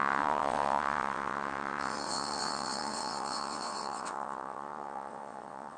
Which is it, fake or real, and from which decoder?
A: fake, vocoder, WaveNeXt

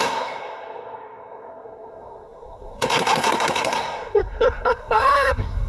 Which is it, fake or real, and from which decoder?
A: fake, codec, SNAC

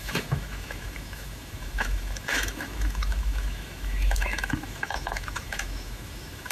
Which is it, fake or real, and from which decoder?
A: fake, autoencoder, DAC-VAE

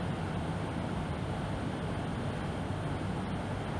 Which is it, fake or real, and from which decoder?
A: real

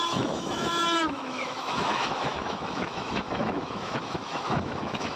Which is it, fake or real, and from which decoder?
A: fake, autoencoder, DAC-VAE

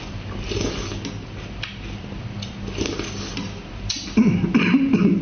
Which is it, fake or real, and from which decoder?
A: real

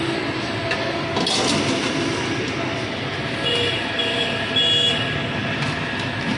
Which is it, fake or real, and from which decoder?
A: real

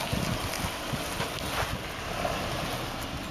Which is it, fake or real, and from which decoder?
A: real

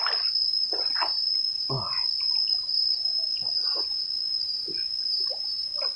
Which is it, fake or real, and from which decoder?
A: real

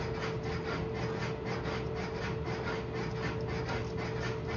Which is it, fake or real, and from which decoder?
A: real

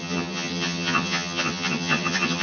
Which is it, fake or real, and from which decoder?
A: fake, vocoder, HiFi-GAN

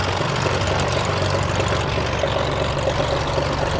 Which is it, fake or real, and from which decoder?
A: real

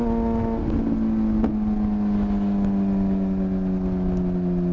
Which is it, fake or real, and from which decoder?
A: real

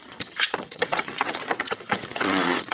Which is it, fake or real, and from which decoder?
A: fake, vocoder, WaveNeXt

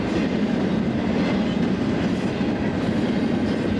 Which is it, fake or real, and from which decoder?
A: real